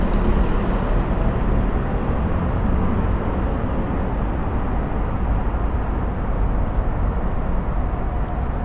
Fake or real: real